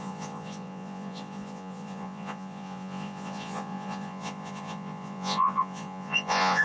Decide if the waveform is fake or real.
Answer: fake